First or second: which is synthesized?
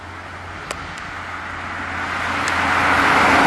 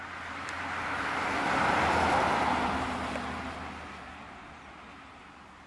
second